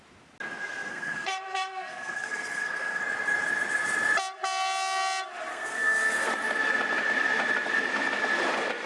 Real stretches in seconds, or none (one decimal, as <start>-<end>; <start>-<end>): 0.0-0.9; 3.0-5.5; 6.3-8.9